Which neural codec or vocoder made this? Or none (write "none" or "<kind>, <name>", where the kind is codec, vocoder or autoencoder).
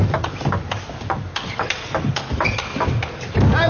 none